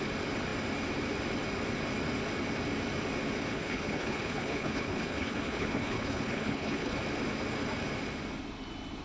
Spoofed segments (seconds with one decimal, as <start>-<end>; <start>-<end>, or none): 3.5-7.0